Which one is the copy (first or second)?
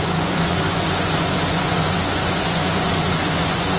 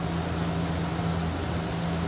first